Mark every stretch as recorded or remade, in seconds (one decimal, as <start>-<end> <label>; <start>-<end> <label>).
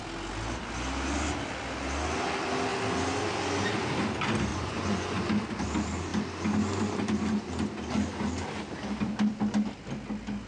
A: 0.0-4.5 recorded; 4.5-5.2 remade; 5.2-10.5 recorded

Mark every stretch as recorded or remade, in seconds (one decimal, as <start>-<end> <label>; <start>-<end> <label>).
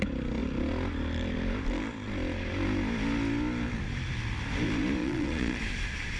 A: 0.0-5.0 recorded; 5.0-5.6 remade; 5.6-6.2 recorded